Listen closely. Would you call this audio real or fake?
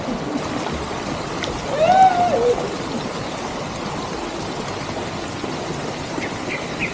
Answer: real